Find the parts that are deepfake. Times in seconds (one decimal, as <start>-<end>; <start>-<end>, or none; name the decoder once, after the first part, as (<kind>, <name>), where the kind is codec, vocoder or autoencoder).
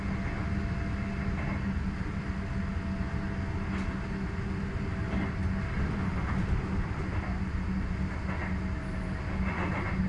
none